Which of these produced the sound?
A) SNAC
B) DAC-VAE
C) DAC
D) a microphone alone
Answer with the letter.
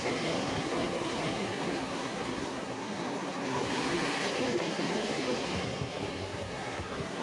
A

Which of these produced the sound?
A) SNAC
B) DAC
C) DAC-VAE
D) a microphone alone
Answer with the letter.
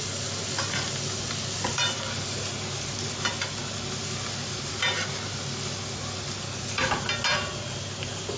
D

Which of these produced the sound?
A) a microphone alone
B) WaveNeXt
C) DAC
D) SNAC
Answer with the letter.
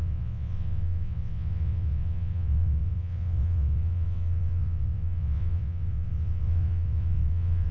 B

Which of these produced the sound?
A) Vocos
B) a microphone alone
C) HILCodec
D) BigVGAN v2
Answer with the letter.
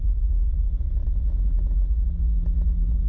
B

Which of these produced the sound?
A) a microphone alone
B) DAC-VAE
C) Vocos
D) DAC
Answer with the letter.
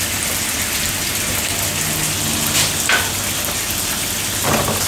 A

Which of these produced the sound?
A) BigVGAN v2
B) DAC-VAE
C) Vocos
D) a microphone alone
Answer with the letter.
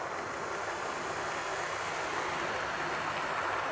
D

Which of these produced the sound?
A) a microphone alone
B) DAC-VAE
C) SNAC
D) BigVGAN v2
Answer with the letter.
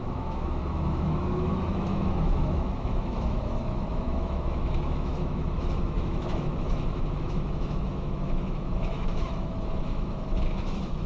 B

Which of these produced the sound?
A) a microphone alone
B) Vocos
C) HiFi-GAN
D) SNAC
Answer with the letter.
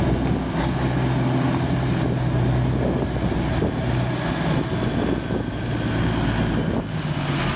A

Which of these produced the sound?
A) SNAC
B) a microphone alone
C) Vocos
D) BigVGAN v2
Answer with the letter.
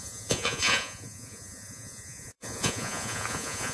C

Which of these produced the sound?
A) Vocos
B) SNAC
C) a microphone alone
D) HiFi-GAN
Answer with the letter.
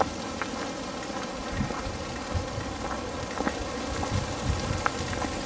C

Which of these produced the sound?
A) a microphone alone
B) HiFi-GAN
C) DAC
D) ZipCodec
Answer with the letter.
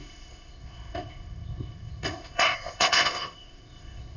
D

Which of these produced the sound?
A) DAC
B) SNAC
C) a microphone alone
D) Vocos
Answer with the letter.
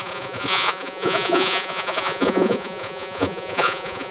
D